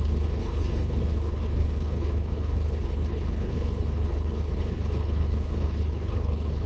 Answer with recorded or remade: remade